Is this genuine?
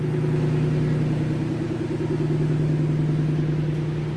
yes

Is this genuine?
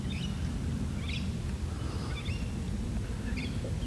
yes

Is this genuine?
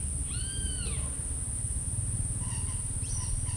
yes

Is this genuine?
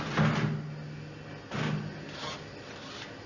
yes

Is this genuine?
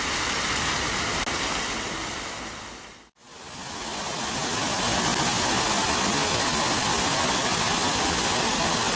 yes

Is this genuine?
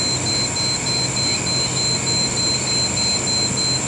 yes